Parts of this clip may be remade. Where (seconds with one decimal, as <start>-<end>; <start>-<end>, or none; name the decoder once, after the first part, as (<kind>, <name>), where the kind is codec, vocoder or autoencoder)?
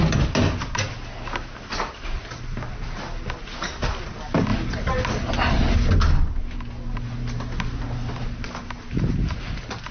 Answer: none